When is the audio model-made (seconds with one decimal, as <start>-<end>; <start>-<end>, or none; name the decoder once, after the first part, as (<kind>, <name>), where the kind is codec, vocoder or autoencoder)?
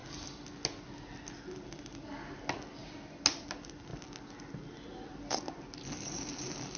none